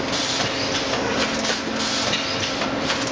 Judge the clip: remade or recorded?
recorded